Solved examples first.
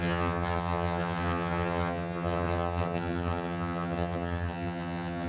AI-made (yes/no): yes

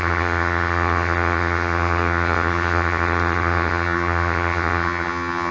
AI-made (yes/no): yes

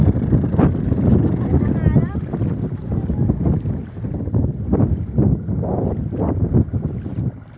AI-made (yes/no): no